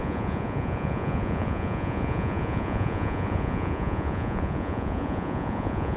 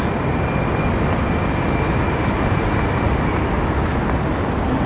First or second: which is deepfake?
first